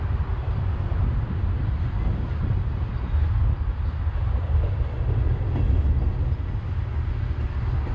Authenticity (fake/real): real